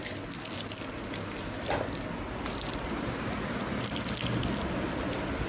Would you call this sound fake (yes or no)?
no